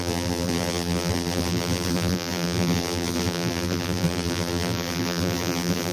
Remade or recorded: remade